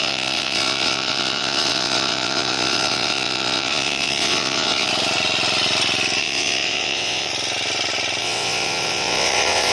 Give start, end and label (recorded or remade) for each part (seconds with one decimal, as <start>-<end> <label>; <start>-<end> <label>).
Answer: 0.0-4.9 remade; 4.9-6.2 recorded; 6.2-7.3 remade; 7.3-8.2 recorded; 8.2-9.7 remade